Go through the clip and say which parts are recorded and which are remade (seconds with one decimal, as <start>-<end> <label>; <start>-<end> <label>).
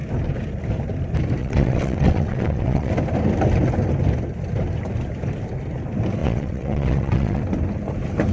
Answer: 0.0-1.4 recorded; 1.4-2.9 remade; 2.9-6.2 recorded; 6.2-7.4 remade; 7.4-8.3 recorded